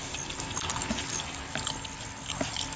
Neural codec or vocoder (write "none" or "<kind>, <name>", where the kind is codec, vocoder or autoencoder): none